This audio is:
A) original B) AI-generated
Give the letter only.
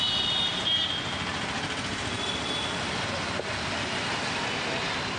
A